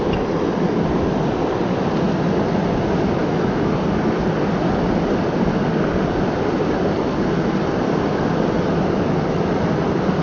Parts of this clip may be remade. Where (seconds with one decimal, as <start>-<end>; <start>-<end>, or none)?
3.2-3.7